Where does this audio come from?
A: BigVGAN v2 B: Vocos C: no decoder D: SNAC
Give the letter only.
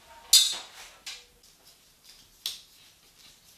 C